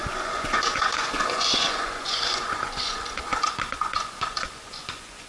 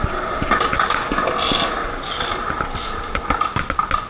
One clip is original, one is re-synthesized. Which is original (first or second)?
second